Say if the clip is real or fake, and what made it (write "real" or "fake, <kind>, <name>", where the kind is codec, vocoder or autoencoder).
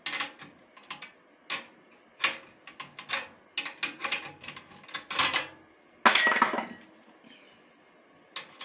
real